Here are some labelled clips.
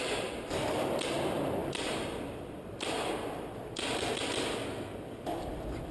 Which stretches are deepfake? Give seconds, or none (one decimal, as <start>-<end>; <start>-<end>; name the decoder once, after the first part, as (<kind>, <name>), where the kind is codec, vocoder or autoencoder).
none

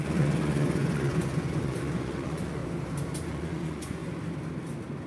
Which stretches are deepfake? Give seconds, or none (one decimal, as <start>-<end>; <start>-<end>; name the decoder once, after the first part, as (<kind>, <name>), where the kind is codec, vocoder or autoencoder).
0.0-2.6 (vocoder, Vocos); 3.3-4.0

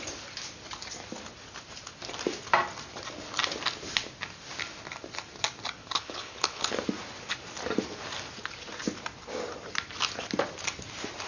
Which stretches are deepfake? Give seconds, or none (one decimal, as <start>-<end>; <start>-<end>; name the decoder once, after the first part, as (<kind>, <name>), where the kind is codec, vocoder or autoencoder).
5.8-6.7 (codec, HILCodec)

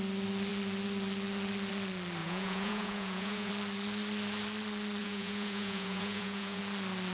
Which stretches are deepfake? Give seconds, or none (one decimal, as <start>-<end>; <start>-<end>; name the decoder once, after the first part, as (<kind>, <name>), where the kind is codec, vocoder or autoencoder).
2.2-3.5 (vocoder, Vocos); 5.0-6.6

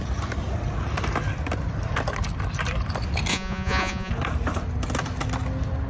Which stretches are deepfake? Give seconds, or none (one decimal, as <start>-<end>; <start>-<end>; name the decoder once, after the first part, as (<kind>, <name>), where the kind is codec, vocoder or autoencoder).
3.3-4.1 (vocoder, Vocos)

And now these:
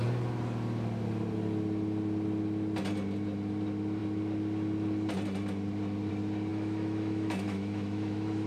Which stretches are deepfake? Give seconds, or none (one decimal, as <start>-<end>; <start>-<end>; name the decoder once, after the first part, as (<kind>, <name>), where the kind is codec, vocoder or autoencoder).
6.5-8.5 (autoencoder, DAC-VAE)

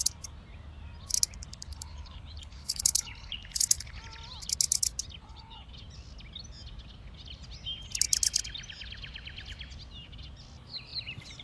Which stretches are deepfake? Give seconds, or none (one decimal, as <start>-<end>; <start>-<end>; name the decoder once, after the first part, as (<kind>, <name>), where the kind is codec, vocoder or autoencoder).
1.5-4.0 (codec, HILCodec); 5.2-5.7

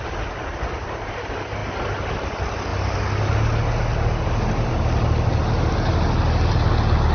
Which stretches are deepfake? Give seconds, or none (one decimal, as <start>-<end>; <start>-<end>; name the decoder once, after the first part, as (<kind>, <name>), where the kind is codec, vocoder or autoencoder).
none